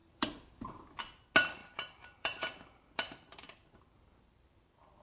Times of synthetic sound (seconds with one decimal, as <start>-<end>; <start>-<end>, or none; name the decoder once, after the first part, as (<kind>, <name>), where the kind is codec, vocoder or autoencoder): 0.0-1.0 (vocoder, BigVGAN v2); 1.6-2.6

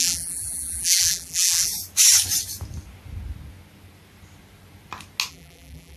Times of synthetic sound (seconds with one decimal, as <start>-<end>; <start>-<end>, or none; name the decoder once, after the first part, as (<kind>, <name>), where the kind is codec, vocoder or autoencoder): 0.0-1.7 (vocoder, BigVGAN v2); 5.3-6.0

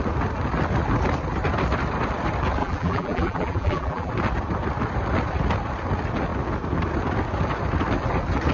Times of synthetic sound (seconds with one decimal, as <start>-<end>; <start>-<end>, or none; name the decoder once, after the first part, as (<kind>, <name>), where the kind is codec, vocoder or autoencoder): 2.6-4.1 (vocoder, BigVGAN v2)

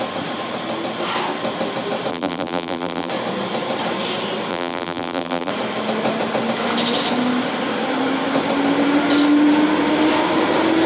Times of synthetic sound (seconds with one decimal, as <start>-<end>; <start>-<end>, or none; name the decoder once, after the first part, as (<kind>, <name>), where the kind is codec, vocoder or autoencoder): 2.1-3.1 (vocoder, BigVGAN v2); 4.5-5.5

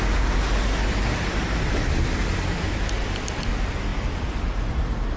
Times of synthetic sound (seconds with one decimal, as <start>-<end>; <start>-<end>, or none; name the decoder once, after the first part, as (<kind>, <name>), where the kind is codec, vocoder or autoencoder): 3.9-5.2 (vocoder, BigVGAN v2)